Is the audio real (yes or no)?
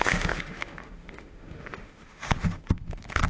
no